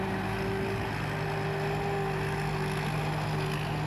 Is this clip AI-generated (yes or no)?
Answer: no